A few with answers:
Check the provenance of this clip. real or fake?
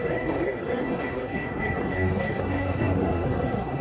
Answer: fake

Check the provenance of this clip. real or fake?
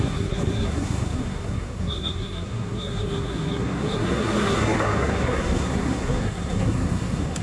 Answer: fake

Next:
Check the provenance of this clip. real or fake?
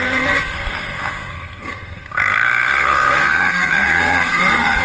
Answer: fake